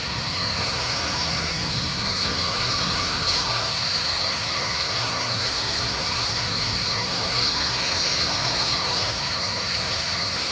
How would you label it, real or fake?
fake